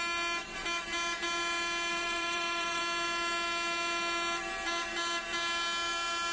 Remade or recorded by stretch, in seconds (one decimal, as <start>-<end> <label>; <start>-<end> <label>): 0.0-1.9 recorded; 1.9-2.8 remade; 2.8-6.3 recorded